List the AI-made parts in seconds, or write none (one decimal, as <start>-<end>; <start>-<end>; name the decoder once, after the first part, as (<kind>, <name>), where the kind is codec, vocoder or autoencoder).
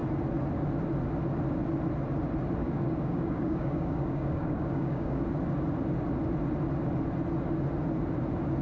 2.6-5.2 (codec, DAC)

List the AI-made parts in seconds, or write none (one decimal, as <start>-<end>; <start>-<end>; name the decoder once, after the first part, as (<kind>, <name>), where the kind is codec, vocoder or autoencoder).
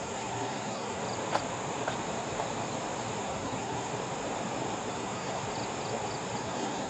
0.0-1.0 (codec, SNAC); 3.2-3.9; 4.9-5.4; 6.4-6.9